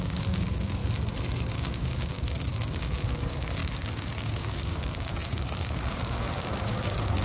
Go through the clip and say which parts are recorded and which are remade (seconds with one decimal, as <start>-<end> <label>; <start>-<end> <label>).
0.0-0.8 remade; 0.8-1.5 recorded; 1.5-7.2 remade

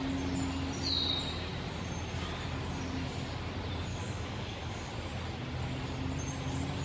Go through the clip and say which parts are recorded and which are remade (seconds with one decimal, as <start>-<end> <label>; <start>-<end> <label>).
0.0-3.9 recorded; 3.9-4.9 remade; 4.9-6.8 recorded